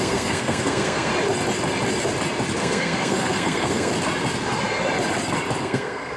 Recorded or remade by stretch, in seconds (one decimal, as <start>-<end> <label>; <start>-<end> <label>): 0.0-1.1 remade; 1.1-2.6 recorded; 2.6-3.9 remade; 3.9-5.6 recorded; 5.6-6.2 remade